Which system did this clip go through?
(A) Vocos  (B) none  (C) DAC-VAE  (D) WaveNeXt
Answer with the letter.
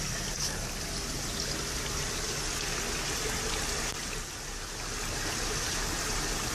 B